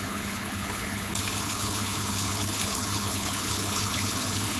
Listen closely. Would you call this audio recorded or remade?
remade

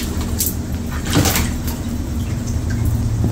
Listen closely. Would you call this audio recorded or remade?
recorded